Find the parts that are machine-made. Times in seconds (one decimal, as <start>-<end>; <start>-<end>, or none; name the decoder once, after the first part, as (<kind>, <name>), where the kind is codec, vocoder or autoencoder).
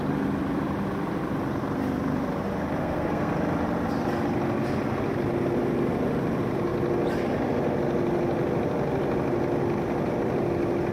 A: 2.8-3.3 (codec, SNAC)